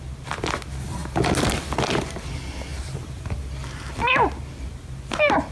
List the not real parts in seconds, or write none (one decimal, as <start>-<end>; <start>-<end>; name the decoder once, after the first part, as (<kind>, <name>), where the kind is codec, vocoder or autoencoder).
none